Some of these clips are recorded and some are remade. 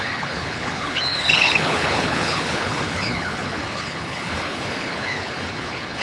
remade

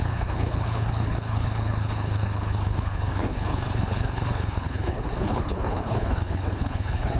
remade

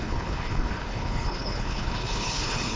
remade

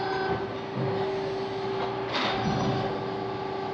recorded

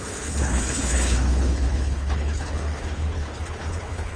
remade